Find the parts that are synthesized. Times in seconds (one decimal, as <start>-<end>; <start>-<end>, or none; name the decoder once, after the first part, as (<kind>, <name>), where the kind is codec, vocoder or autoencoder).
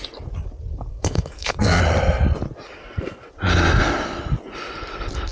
0.9-1.8 (codec, SNAC); 2.8-3.3